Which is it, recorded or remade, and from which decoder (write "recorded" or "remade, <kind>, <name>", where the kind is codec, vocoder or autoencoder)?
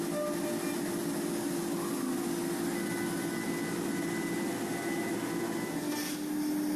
recorded